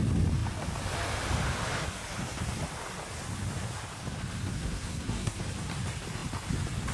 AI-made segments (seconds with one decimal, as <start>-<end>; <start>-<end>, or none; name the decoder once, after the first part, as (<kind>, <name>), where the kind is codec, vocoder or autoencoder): 4.4-5.4 (codec, SNAC)